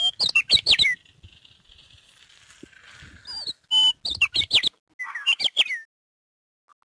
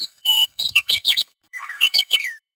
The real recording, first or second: first